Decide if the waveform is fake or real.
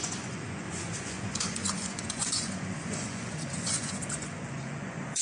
fake